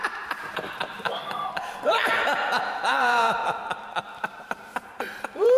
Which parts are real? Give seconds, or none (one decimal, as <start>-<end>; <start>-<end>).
none